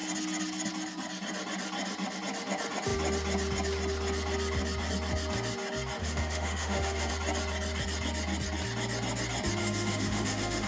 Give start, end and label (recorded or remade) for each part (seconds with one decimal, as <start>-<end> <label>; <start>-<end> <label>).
0.0-6.0 recorded; 6.0-7.1 remade; 7.1-9.6 recorded; 9.6-10.7 remade